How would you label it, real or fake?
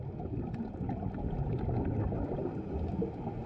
real